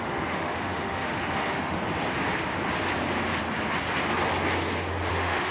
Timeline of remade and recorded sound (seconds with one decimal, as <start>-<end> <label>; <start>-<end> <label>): 0.0-1.8 remade; 1.8-5.1 recorded; 5.1-5.5 remade